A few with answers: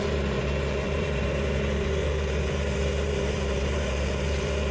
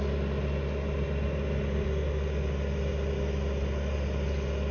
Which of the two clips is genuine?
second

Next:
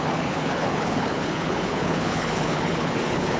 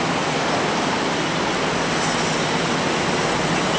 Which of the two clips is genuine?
second